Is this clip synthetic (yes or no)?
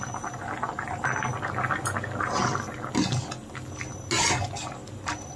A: no